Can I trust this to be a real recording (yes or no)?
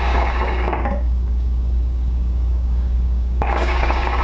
no